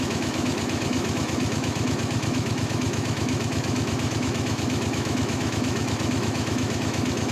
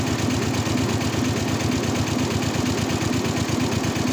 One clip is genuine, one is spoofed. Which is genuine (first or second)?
second